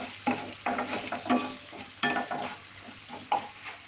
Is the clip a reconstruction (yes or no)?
no